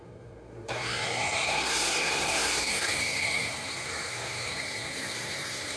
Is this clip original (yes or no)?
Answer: no